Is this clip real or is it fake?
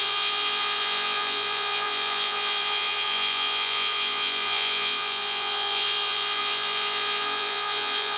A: fake